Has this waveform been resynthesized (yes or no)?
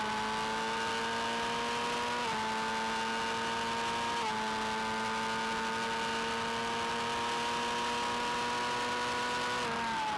no